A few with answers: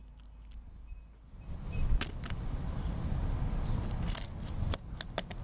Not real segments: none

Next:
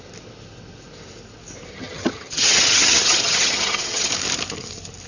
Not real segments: 1.7-4.1

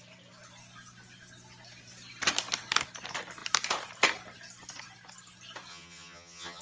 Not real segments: 5.7-6.6

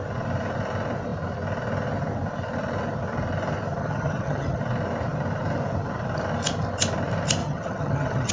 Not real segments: 3.8-4.6; 7.4-8.3

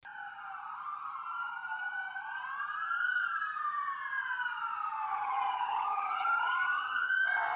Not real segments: 5.1-7.1

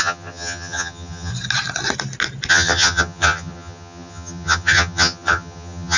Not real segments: 0.0-1.3; 2.5-6.0